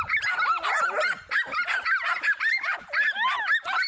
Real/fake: real